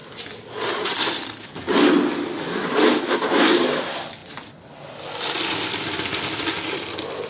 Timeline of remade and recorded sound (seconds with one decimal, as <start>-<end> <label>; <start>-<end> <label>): 0.0-7.3 recorded